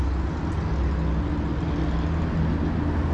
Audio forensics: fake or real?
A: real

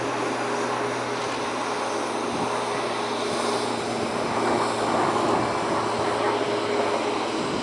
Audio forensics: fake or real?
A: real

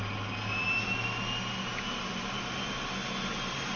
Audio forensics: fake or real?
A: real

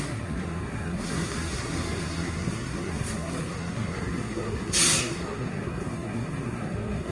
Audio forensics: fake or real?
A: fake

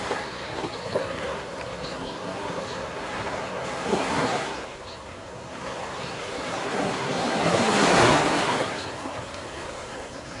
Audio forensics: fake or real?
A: fake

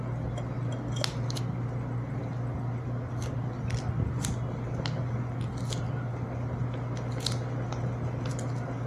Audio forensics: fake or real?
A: real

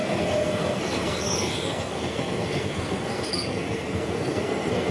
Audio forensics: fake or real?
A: fake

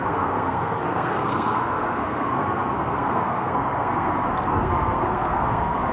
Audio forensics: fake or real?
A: fake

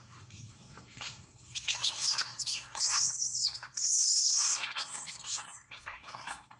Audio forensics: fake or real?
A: fake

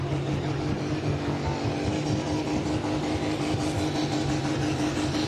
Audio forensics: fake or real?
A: real